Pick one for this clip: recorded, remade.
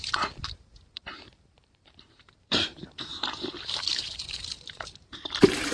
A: remade